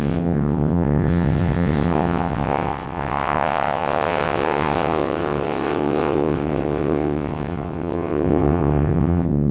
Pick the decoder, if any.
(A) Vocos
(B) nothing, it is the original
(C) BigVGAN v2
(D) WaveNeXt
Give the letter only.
D